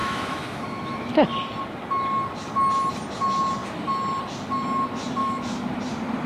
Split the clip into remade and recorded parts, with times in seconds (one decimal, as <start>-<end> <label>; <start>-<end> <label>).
0.0-1.1 remade; 1.1-5.2 recorded; 5.2-5.7 remade; 5.7-6.3 recorded